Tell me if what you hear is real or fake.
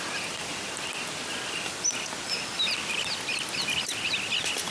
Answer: real